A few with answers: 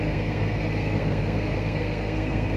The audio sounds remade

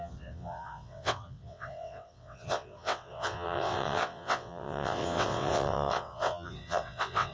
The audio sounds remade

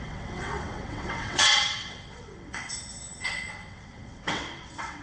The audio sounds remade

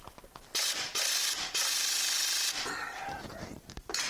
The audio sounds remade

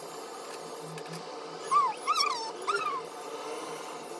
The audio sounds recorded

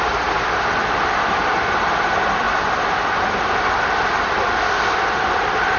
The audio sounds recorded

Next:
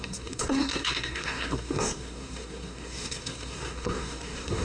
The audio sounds remade